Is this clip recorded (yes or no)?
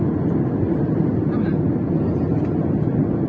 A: yes